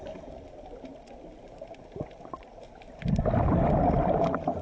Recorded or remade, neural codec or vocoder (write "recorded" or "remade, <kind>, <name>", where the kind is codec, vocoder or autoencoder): recorded